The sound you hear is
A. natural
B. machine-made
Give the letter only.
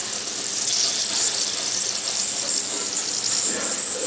A